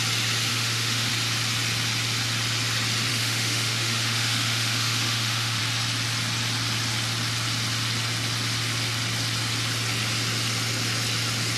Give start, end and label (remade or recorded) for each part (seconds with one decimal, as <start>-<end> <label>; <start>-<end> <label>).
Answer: 0.0-0.5 recorded; 0.5-1.1 remade; 1.1-3.1 recorded; 3.1-5.6 remade; 5.6-11.6 recorded